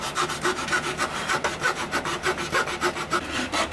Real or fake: real